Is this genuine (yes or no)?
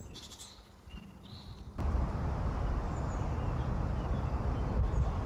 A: no